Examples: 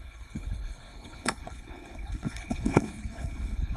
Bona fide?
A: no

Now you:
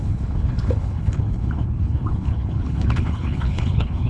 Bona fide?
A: no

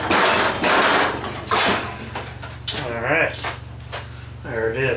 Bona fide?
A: yes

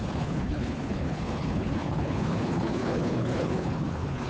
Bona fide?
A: no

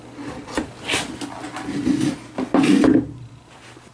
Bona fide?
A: yes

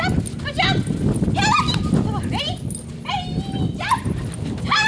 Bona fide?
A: yes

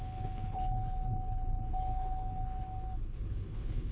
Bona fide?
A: no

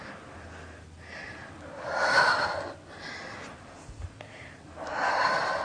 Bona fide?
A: yes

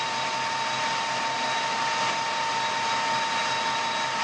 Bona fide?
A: yes